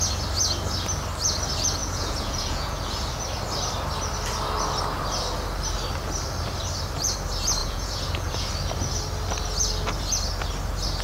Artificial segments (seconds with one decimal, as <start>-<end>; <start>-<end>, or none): 1.8-2.8; 7.6-8.5